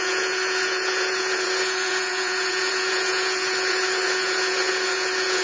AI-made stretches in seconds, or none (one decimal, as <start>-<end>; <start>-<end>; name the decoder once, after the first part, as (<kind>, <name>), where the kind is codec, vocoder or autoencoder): 0.0-5.4 (vocoder, Vocos)